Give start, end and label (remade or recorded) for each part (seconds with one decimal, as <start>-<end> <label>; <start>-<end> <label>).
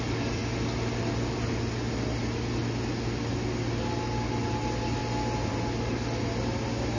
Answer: 0.0-7.0 recorded